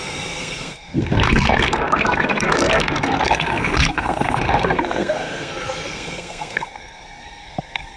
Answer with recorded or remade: remade